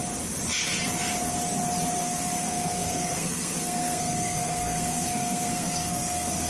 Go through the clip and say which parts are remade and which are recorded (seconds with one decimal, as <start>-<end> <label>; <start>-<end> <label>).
0.0-2.0 recorded; 2.0-6.5 remade